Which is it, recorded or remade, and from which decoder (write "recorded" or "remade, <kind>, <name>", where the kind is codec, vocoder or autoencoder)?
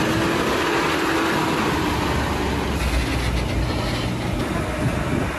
recorded